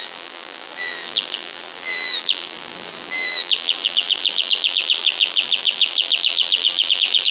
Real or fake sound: fake